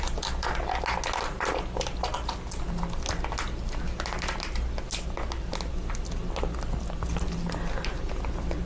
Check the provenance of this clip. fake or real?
real